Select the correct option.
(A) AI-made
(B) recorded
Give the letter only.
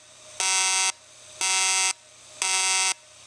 B